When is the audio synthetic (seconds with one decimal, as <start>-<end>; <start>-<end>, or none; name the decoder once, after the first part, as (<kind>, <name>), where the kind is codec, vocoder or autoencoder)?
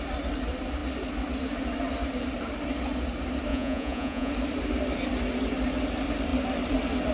3.5-4.3 (vocoder, Vocos)